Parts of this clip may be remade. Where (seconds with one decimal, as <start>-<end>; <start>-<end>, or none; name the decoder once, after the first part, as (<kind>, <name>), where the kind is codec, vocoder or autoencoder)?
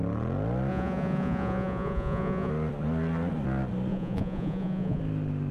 0.7-2.5 (vocoder, Vocos); 3.9-5.0